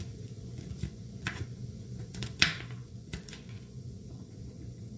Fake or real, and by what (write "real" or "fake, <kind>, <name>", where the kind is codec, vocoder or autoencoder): fake, vocoder, Vocos